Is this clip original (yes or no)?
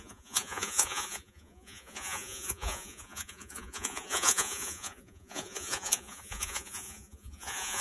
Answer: no